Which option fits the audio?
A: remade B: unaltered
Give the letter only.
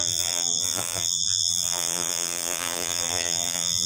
A